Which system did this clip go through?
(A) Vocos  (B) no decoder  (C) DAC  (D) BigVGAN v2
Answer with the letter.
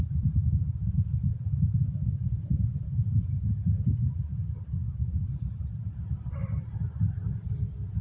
D